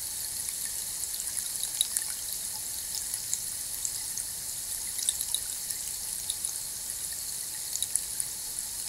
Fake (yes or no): no